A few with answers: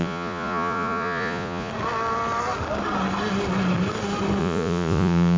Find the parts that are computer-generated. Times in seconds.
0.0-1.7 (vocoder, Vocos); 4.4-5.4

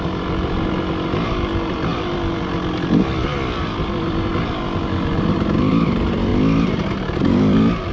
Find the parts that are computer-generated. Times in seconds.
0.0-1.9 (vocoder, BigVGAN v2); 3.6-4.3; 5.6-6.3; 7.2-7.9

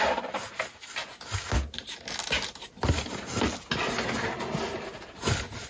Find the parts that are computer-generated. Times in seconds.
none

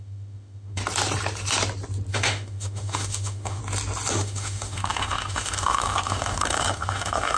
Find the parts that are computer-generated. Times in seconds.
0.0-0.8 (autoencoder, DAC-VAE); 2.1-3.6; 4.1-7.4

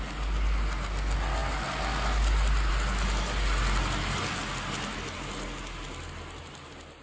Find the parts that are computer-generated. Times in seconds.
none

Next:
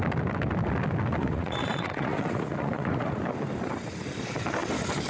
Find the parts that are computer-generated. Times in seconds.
1.2-3.2 (vocoder, Vocos)

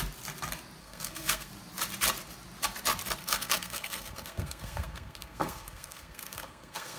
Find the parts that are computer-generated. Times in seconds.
0.8-1.5 (codec, SNAC); 3.2-7.0

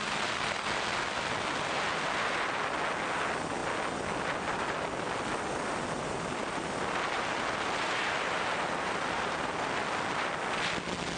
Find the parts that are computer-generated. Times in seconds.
none